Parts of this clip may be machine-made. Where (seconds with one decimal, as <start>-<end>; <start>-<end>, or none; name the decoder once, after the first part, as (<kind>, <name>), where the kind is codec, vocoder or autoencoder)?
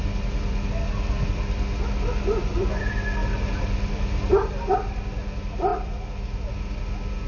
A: none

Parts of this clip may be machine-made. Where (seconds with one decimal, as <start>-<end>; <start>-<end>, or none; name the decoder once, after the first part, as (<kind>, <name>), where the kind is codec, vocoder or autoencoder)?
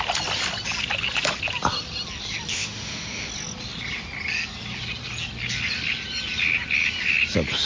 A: 2.5-3.3 (autoencoder, DAC-VAE)